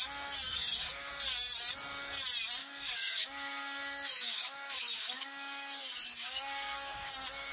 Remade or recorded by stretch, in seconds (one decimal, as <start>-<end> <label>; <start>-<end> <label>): 0.0-0.5 recorded; 0.5-1.1 remade; 1.1-2.6 recorded; 2.6-7.1 remade; 7.1-7.5 recorded